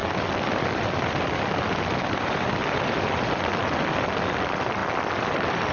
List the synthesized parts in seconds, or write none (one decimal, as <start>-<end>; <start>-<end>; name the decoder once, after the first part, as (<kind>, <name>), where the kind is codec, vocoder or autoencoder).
0.0-3.4 (vocoder, BigVGAN v2); 4.8-5.7